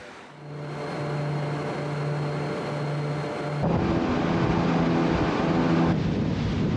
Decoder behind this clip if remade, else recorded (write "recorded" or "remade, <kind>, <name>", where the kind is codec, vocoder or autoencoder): recorded